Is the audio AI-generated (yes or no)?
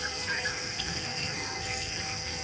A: yes